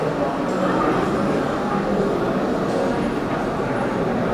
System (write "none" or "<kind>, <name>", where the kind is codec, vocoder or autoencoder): none